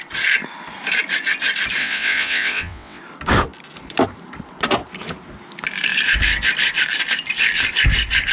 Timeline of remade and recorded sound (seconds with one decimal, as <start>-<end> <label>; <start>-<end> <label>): 0.0-1.8 recorded; 1.8-3.0 remade; 3.0-8.3 recorded